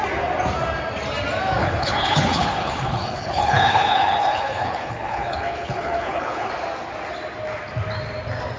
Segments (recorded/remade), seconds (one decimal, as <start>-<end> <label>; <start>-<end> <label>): 0.0-1.6 recorded; 1.6-6.5 remade; 6.5-8.6 recorded